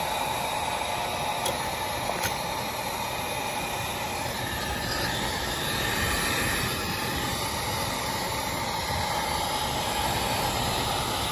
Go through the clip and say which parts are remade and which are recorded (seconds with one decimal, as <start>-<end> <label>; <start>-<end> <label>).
0.0-11.3 recorded